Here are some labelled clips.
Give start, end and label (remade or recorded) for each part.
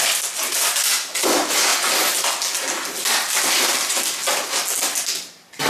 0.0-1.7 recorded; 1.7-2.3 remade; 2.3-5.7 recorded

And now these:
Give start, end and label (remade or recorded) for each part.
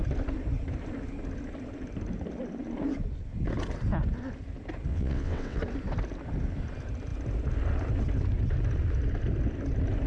0.0-4.9 recorded; 4.9-5.6 remade; 5.6-10.1 recorded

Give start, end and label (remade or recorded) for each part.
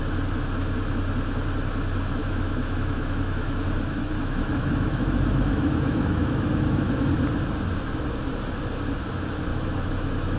0.0-2.2 recorded; 2.2-7.1 remade; 7.1-9.5 recorded; 9.5-10.4 remade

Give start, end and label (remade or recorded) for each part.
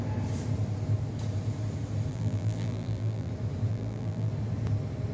0.0-2.1 recorded; 2.1-3.3 remade; 3.3-3.7 recorded; 3.7-4.3 remade; 4.3-5.1 recorded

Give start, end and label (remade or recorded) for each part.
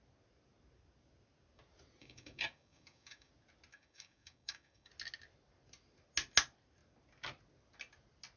0.0-2.0 recorded; 2.0-3.3 remade; 3.3-3.7 recorded; 3.7-4.9 remade; 4.9-8.4 recorded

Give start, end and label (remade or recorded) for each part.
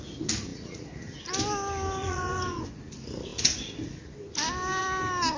0.0-2.0 recorded; 2.0-2.8 remade; 2.8-5.4 recorded